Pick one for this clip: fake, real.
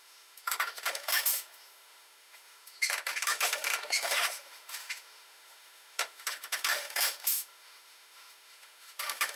fake